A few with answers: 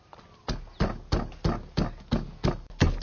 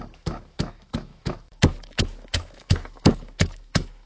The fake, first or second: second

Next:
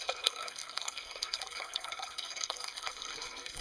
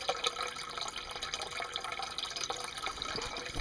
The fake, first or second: first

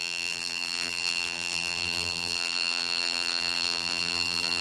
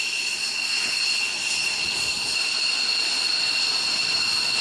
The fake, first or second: first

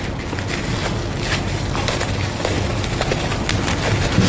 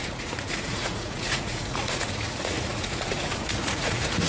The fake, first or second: second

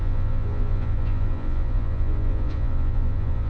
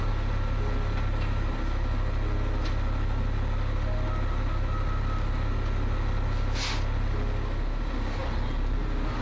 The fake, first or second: first